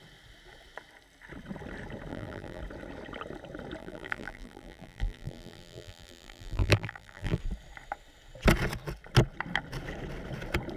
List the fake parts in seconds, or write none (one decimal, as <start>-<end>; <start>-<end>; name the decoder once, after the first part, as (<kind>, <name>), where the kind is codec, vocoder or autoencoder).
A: 2.1-2.6 (vocoder, BigVGAN v2); 3.8-7.4